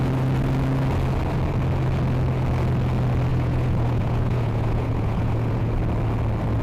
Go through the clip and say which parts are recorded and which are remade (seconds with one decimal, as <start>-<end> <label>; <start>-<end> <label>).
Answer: 0.0-3.3 recorded; 3.3-5.8 remade; 5.8-6.6 recorded